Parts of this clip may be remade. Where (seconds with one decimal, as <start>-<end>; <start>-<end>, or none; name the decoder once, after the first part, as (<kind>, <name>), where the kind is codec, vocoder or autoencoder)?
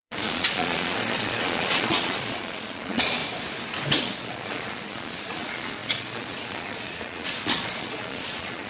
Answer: 0.0-3.2 (vocoder, Vocos); 4.0-8.7